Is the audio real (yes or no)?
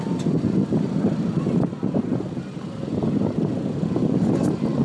yes